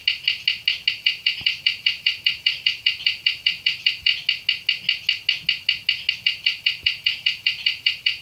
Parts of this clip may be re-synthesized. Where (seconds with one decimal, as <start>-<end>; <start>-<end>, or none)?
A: 0.9-4.1; 6.1-8.2